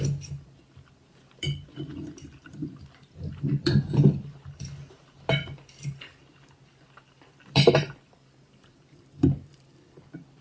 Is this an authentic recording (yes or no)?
no